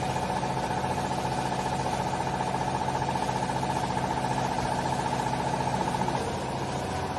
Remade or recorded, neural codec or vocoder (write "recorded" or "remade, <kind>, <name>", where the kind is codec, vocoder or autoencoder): recorded